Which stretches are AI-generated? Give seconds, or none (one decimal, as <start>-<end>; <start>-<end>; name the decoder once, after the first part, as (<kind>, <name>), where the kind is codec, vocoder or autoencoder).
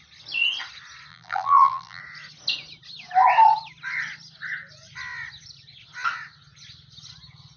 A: 1.1-2.0 (vocoder, BigVGAN v2)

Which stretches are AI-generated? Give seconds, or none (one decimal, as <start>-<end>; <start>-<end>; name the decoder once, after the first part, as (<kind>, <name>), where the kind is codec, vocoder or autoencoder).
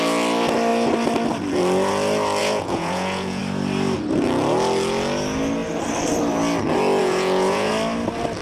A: 2.4-3.4 (vocoder, Vocos); 7.0-7.7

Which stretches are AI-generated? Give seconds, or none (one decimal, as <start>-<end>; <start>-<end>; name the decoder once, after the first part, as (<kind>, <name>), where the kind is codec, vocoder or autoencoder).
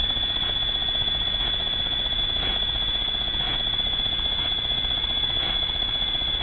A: 0.0-6.4 (vocoder, Vocos)